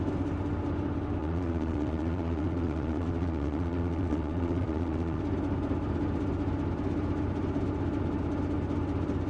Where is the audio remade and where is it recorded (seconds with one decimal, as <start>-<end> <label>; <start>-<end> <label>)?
0.0-1.2 recorded; 1.2-5.2 remade; 5.2-9.3 recorded